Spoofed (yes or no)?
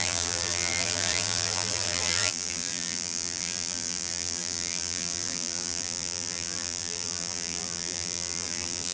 yes